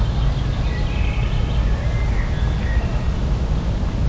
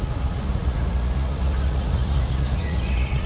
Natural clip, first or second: first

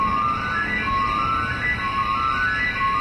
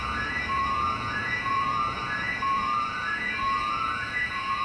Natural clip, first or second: first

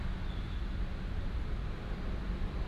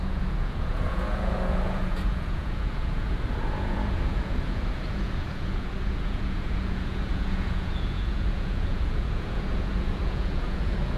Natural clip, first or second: first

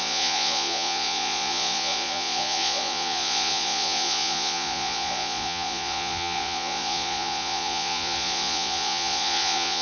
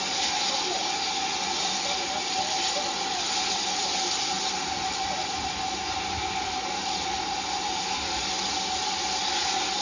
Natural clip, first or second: second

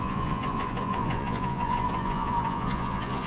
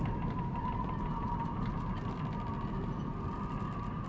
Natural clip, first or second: second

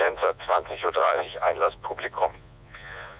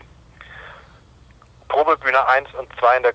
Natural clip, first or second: second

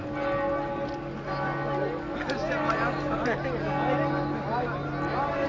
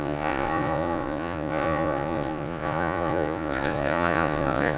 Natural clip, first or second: first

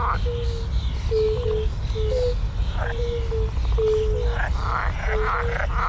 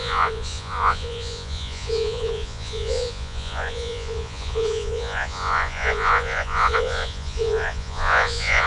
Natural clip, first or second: first